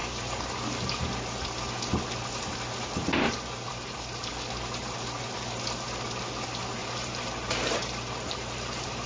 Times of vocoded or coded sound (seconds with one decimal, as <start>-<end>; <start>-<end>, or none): 3.7-4.3; 6.8-9.1